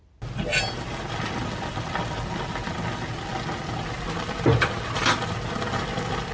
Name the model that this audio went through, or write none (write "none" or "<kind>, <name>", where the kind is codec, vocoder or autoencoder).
none